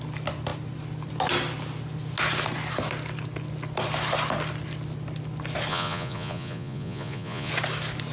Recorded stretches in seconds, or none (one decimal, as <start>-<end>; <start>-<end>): 0.0-5.7; 7.5-8.1